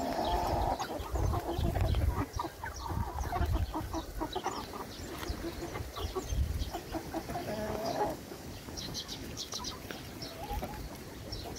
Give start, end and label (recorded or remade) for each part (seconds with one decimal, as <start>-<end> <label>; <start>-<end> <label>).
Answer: 0.0-7.4 recorded; 7.4-9.6 remade; 9.6-11.6 recorded